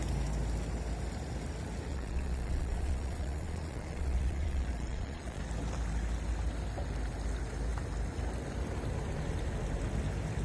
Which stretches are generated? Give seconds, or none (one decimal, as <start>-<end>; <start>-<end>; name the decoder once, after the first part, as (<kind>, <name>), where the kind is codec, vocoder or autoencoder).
1.9-5.4 (vocoder, Vocos)